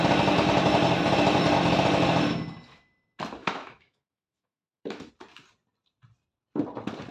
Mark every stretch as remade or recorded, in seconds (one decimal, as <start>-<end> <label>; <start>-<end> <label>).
0.0-3.4 recorded; 3.4-5.1 remade; 5.1-7.1 recorded